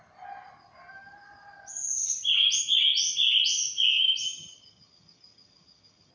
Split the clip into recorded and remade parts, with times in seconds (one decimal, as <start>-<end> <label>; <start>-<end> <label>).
0.0-3.9 recorded; 3.9-6.1 remade